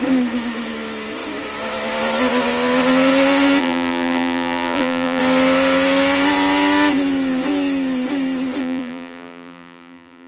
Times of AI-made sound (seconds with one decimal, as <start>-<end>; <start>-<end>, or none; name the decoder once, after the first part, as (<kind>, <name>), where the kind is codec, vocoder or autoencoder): 3.6-5.2 (vocoder, BigVGAN v2); 8.6-10.3